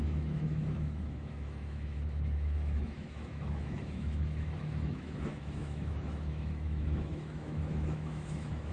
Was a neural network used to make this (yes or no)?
yes